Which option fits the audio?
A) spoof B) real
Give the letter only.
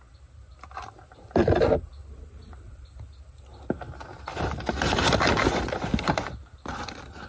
B